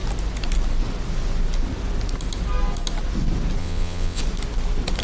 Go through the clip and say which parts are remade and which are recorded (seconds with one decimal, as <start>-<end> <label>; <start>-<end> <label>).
0.0-3.6 recorded; 3.6-4.2 remade; 4.2-5.0 recorded